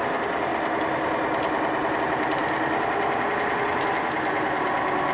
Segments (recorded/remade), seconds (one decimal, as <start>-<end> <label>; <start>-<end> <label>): 0.0-5.1 recorded

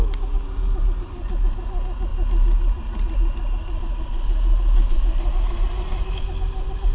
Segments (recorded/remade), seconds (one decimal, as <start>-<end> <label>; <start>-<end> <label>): 0.0-6.9 recorded

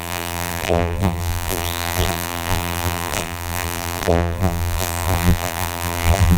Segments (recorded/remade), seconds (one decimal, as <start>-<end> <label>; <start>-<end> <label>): 0.0-6.4 remade

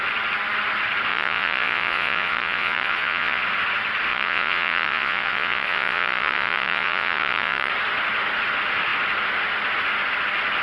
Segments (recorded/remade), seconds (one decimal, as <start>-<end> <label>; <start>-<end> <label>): 0.0-1.1 recorded; 1.1-3.4 remade; 3.4-4.1 recorded; 4.1-7.7 remade; 7.7-10.6 recorded

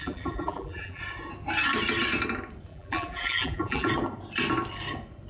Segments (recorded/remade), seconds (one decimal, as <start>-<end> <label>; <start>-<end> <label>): 0.0-1.0 remade; 1.0-2.7 recorded; 2.7-3.9 remade; 3.9-5.3 recorded